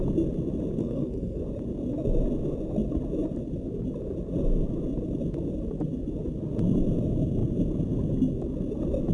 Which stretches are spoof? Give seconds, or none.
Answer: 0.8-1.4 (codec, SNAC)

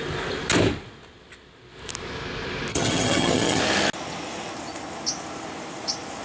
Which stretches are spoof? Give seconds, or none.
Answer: 2.7-3.6 (vocoder, HiFi-GAN)

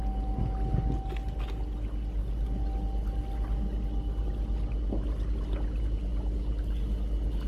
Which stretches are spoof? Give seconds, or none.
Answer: none

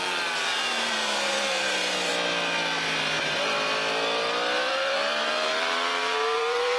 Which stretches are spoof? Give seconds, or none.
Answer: 0.0-2.1 (vocoder, BigVGAN v2); 4.7-6.8

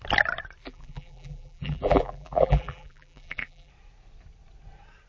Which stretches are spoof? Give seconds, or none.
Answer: 0.6-3.7 (vocoder, BigVGAN v2)

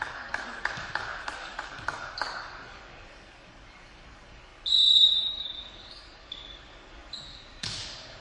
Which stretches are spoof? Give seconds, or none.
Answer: 0.0-4.5 (codec, DAC); 5.2-8.2